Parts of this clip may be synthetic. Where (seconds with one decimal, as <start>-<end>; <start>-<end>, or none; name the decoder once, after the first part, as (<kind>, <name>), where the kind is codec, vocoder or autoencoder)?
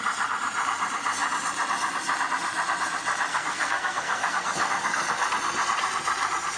3.3-5.1 (codec, SNAC)